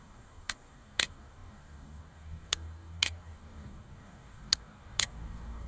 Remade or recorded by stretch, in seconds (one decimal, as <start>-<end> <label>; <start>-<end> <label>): 0.0-5.7 remade